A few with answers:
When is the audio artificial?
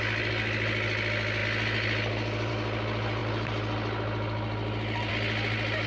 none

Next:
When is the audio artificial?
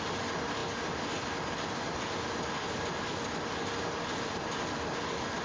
none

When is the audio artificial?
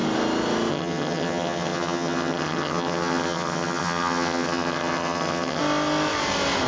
0.7-5.6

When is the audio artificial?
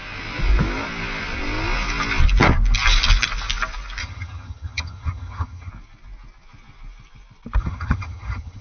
4.0-5.7; 7.6-8.6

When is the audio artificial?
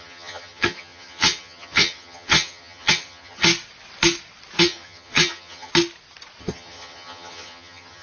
0.0-3.5; 4.6-5.7; 6.4-8.0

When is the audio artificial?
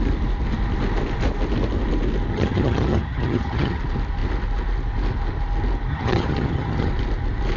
2.3-3.8; 5.9-6.9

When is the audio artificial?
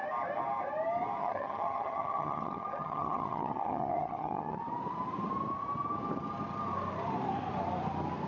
1.2-4.6